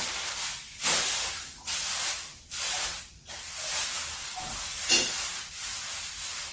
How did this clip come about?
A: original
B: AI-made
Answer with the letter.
A